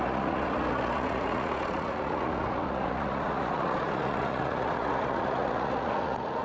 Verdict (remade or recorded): remade